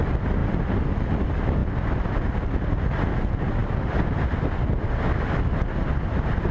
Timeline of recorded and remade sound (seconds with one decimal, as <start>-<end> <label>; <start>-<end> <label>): 0.0-6.5 recorded